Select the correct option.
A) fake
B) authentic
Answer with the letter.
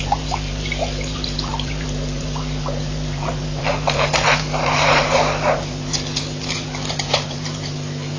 A